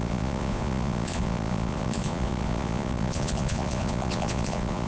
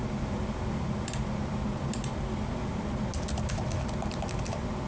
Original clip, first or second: second